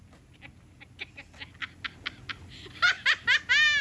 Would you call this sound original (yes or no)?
yes